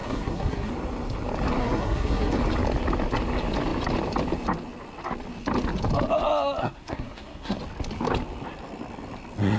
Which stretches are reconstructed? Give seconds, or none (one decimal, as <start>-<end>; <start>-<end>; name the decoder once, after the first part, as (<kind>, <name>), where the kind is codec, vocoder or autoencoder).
0.0-0.7 (codec, SNAC); 1.6-2.4; 6.6-7.6